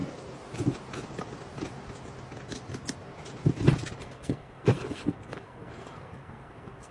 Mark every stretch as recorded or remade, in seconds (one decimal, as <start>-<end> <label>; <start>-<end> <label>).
0.0-4.0 recorded; 4.0-6.9 remade